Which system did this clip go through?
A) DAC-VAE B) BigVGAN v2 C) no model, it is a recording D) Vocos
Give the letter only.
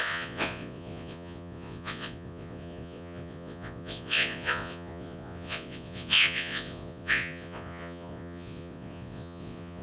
D